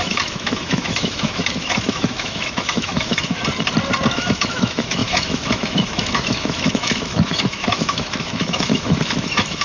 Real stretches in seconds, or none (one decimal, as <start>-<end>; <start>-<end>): 3.4-4.1